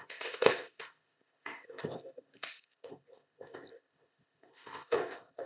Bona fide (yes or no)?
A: no